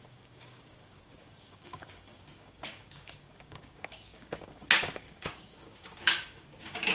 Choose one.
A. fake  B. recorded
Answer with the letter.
A